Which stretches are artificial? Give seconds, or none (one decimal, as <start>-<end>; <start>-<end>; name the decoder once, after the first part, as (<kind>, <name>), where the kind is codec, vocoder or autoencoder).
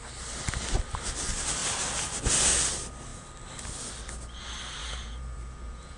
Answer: 4.8-6.0 (vocoder, Vocos)